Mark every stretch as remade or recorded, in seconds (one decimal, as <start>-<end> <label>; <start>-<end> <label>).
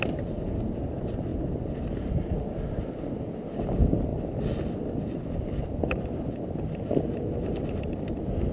0.0-1.3 recorded; 1.3-2.1 remade; 2.1-4.1 recorded; 4.1-6.2 remade; 6.2-8.5 recorded